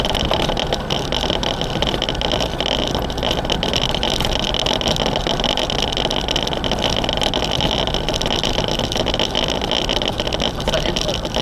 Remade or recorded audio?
recorded